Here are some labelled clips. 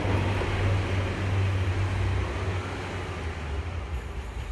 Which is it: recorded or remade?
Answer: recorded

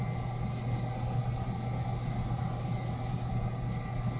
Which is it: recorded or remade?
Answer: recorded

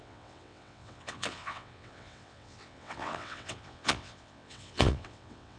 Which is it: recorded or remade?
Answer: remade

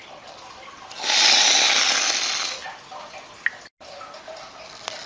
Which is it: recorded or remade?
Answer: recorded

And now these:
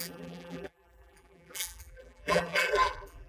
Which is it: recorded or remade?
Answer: remade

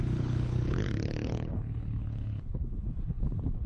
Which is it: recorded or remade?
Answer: remade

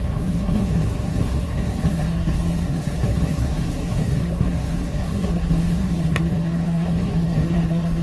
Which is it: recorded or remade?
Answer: remade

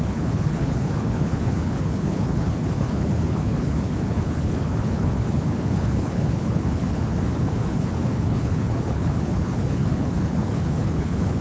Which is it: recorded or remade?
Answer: remade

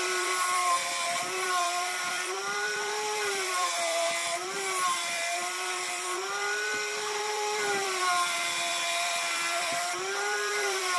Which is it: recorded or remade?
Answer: remade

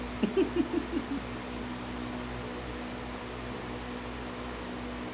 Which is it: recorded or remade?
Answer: recorded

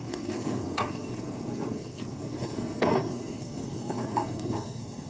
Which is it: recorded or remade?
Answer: remade